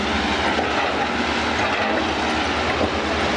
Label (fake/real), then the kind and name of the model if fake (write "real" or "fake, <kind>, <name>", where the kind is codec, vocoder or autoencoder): real